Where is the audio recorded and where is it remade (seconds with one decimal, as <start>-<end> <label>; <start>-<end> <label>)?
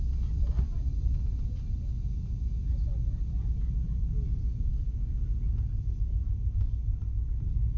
0.0-4.7 recorded; 4.7-5.2 remade; 5.2-7.8 recorded